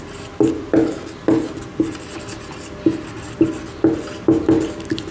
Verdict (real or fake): real